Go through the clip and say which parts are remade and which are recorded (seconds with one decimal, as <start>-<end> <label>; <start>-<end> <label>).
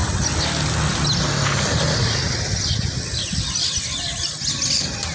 0.0-5.1 recorded